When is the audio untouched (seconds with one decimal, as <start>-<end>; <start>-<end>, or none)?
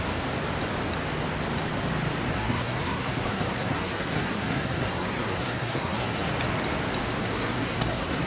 0.0-2.3; 6.3-7.2